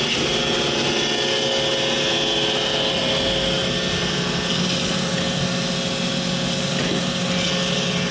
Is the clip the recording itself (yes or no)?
yes